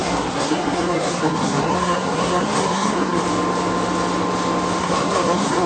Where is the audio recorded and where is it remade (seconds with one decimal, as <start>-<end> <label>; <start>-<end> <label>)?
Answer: 0.0-3.2 remade; 3.2-4.8 recorded; 4.8-5.7 remade